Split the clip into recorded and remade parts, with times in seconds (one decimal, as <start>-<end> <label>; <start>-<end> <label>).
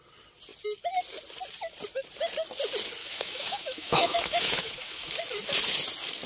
0.0-3.0 recorded; 3.0-5.1 remade; 5.1-6.3 recorded